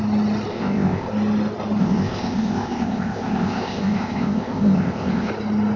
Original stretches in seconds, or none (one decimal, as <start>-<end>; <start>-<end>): 0.0-0.5; 1.1-1.8; 5.3-5.8

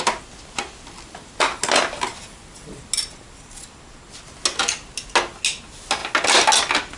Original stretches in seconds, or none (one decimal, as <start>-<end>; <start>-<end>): 0.0-7.0